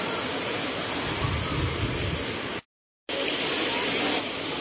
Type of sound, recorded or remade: recorded